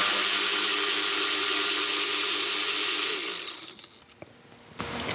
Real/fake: real